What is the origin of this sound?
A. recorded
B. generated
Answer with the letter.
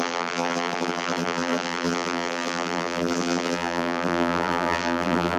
B